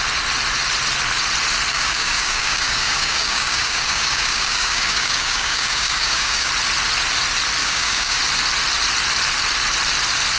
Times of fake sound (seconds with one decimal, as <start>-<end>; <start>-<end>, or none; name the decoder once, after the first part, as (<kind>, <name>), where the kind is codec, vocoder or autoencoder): 1.7-6.5 (codec, DAC); 7.6-8.2